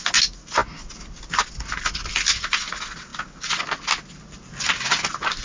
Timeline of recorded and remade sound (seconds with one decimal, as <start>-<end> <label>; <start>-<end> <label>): 0.0-5.4 recorded